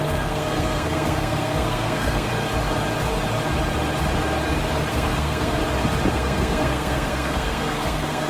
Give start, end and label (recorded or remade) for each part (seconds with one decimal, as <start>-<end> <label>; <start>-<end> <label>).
0.0-2.3 remade; 2.3-4.9 recorded; 4.9-5.6 remade; 5.6-6.1 recorded; 6.1-8.3 remade